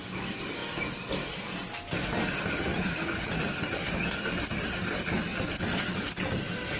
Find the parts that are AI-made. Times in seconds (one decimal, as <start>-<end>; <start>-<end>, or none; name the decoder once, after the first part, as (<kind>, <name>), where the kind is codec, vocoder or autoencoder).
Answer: 2.7-3.5 (vocoder, Vocos)